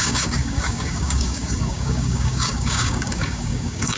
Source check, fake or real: fake